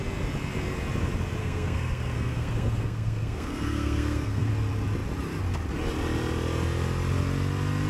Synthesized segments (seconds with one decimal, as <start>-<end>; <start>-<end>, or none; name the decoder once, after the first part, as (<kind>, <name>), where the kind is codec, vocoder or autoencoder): 1.4-4.5 (codec, SNAC)